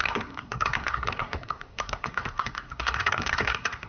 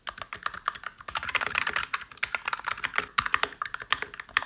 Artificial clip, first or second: first